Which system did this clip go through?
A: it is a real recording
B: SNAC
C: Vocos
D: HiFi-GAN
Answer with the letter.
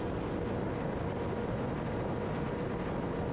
A